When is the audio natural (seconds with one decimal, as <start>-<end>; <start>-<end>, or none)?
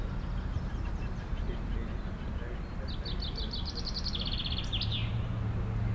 0.0-5.9